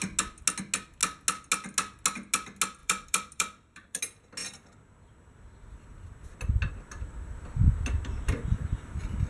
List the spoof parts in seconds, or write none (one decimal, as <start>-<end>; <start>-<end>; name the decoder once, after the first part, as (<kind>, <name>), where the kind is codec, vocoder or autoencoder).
2.8-4.0 (vocoder, BigVGAN v2)